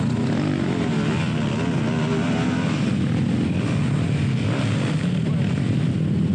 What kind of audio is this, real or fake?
real